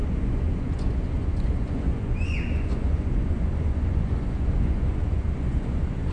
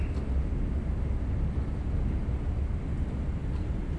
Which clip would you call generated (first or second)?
first